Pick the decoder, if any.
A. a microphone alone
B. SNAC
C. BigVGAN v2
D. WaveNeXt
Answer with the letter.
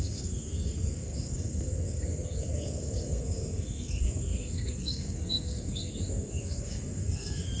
B